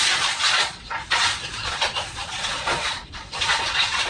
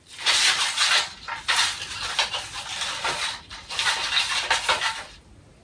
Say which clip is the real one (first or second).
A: second